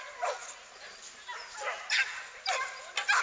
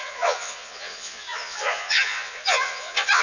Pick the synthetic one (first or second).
second